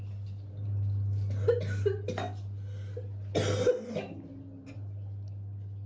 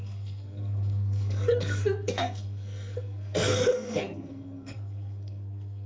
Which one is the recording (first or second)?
first